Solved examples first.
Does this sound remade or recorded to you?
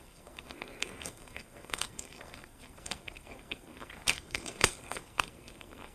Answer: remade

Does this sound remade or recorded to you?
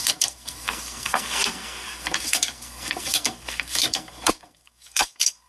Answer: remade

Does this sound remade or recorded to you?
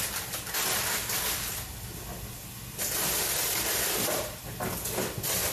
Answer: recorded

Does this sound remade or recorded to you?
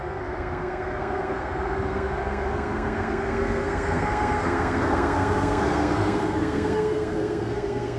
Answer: remade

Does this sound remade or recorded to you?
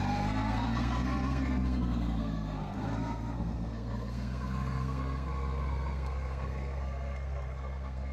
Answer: remade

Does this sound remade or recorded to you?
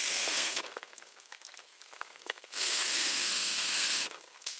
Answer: remade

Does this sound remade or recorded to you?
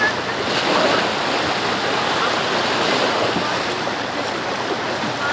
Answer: recorded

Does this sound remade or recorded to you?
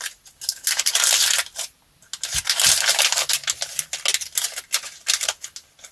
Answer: recorded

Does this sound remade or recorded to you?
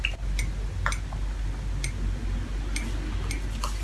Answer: recorded